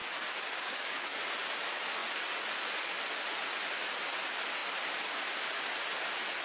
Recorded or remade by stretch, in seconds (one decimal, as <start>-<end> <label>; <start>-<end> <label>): 0.0-1.2 remade; 1.2-6.4 recorded